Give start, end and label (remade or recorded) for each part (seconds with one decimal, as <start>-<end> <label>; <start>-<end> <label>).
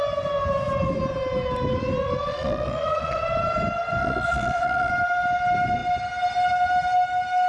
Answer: 0.0-2.3 recorded; 2.3-3.2 remade; 3.2-4.0 recorded; 4.0-4.9 remade; 4.9-7.5 recorded